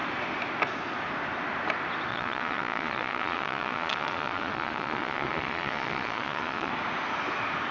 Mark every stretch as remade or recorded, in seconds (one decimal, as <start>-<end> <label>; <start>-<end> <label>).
0.0-2.1 recorded; 2.1-6.7 remade; 6.7-7.7 recorded